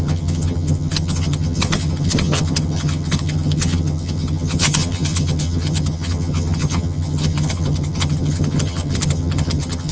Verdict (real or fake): fake